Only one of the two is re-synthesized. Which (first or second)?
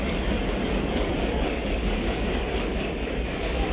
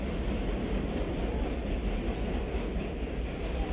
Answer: first